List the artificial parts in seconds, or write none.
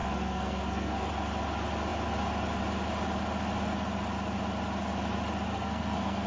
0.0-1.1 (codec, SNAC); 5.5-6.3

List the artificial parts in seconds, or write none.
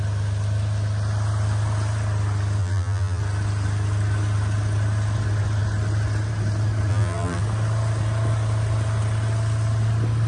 2.6-3.2 (vocoder, BigVGAN v2); 6.9-7.4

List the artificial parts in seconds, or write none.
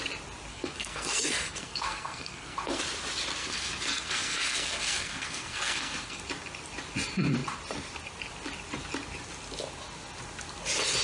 0.5-2.8 (codec, SNAC); 3.4-6.2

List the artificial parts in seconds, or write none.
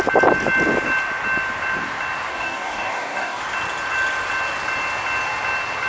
2.3-3.4 (codec, DAC)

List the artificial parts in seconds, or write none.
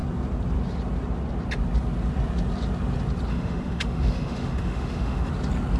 3.3-5.3 (autoencoder, DAC-VAE)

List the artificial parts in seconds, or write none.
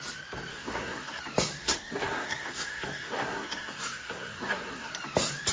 0.5-1.2 (codec, SNAC); 1.6-4.9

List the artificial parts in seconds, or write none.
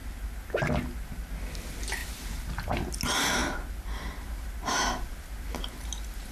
2.0-2.5 (vocoder, BigVGAN v2)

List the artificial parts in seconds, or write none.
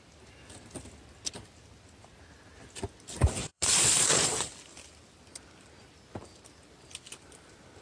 3.4-4.5 (vocoder, Vocos)